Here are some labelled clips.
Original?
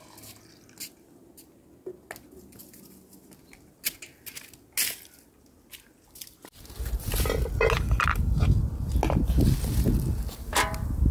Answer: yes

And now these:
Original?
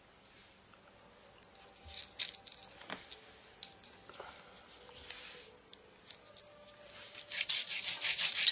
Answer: yes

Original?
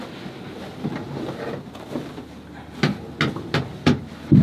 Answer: yes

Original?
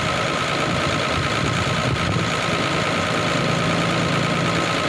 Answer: yes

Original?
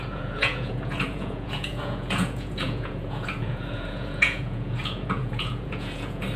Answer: no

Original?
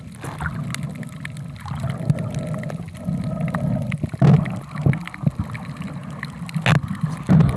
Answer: yes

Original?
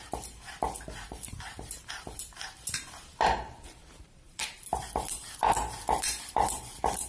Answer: no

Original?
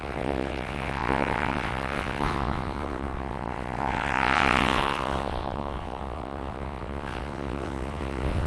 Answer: no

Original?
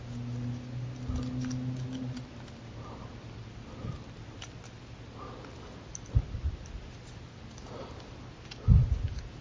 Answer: yes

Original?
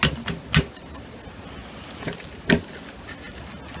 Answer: yes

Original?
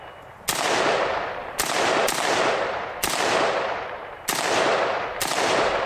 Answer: yes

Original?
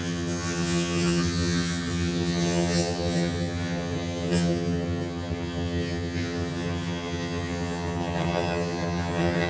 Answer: no